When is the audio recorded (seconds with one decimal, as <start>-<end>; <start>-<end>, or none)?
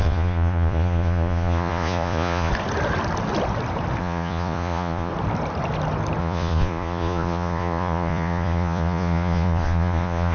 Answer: 2.5-4.0; 5.1-6.2